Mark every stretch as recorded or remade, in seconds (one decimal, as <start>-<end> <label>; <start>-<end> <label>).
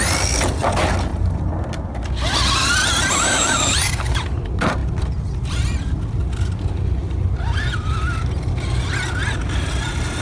0.0-10.2 recorded